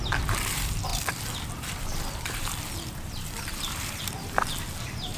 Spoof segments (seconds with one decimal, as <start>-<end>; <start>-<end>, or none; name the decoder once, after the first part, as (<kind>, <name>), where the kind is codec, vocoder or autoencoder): 0.0-5.2 (vocoder, BigVGAN v2)